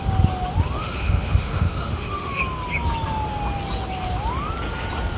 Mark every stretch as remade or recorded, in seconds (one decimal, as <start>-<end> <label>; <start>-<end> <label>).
0.0-0.8 recorded; 0.8-2.4 remade; 2.4-5.2 recorded